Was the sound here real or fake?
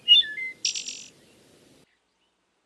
real